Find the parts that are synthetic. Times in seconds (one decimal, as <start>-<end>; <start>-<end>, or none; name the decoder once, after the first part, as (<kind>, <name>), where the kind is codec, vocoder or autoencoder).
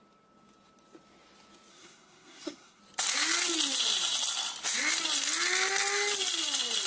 1.7-2.8 (codec, SNAC)